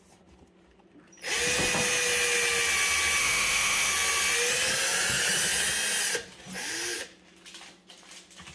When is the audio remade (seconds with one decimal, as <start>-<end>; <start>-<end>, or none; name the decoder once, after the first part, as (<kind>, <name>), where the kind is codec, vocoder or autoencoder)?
3.2-3.9 (autoencoder, DAC-VAE)